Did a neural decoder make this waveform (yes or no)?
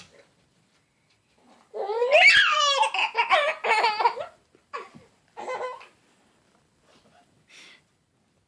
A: no